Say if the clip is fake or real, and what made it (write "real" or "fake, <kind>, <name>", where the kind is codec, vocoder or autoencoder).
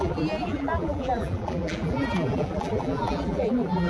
fake, vocoder, BigVGAN v2